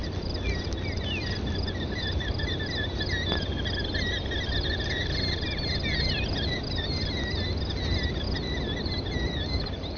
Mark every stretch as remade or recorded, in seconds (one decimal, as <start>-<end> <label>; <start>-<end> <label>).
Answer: 0.0-10.0 recorded